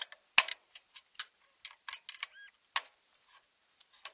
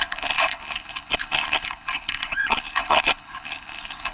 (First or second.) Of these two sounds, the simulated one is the second